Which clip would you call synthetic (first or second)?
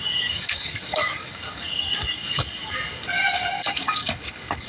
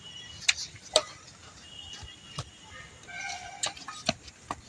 first